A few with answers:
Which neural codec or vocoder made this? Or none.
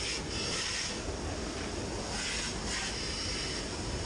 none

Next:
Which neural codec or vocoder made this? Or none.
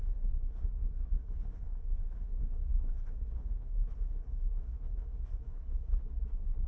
codec, HILCodec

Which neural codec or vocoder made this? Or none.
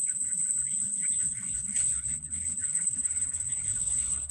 codec, HILCodec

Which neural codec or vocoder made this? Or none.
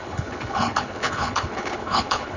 codec, HILCodec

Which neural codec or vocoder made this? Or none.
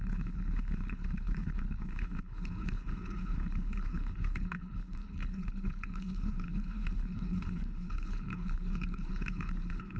codec, HILCodec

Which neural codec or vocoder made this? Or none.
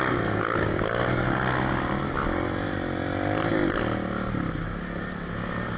none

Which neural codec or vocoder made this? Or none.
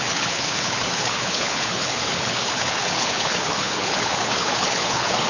codec, HILCodec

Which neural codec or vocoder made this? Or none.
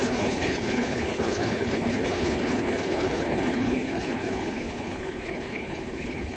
codec, HILCodec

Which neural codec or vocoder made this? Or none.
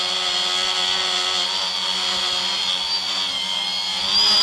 none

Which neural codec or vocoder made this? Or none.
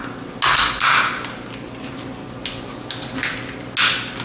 none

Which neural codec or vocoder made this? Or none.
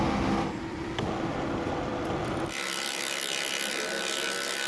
none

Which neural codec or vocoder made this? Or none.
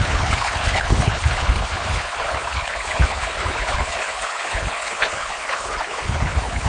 codec, HILCodec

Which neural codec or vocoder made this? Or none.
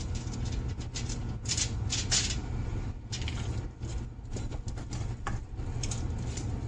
none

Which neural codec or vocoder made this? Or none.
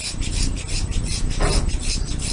none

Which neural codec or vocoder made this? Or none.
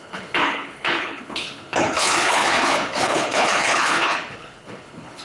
codec, HILCodec